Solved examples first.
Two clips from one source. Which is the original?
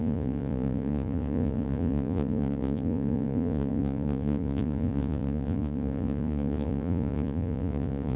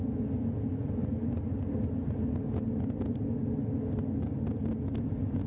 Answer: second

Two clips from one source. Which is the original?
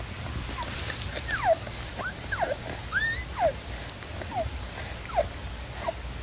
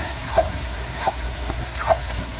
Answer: first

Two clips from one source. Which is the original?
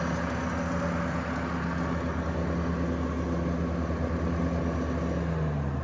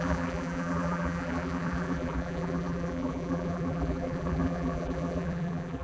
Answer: first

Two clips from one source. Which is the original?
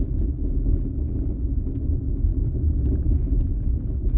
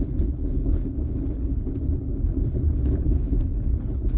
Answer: first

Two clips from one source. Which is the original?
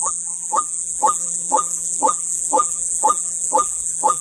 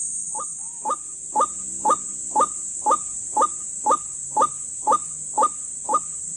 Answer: second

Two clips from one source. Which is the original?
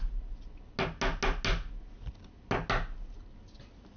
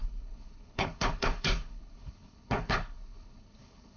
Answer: first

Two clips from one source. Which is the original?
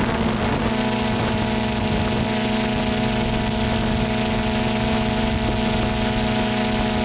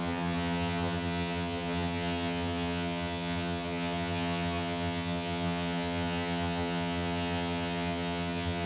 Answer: first